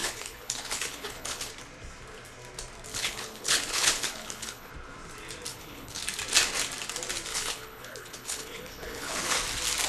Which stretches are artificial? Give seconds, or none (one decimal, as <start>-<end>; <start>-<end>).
0.0-1.5; 2.9-4.7; 5.5-6.0; 7.3-9.4